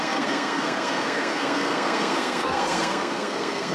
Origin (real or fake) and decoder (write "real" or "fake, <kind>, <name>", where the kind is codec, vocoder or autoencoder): fake, codec, SNAC